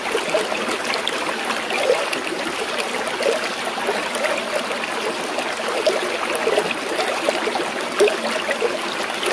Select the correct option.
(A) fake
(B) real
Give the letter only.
B